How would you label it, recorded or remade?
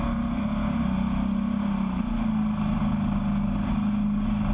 recorded